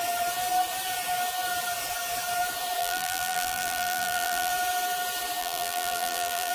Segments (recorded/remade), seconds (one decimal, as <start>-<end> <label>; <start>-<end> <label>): 0.0-2.8 recorded; 2.8-4.5 remade; 4.5-5.4 recorded; 5.4-6.5 remade